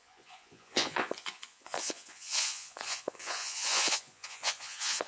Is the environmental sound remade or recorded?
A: remade